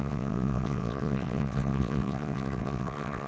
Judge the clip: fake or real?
fake